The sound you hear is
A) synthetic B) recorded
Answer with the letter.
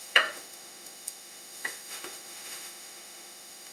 A